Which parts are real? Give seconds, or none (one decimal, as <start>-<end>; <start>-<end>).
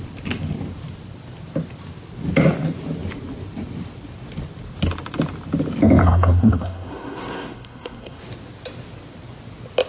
0.0-6.0; 8.2-9.9